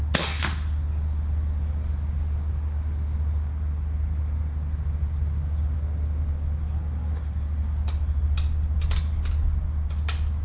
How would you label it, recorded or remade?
recorded